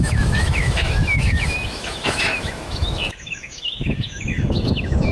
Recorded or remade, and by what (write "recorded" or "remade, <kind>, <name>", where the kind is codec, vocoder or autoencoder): remade, autoencoder, DAC-VAE